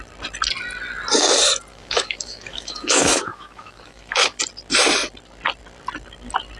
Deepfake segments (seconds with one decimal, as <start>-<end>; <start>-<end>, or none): 1.7-4.4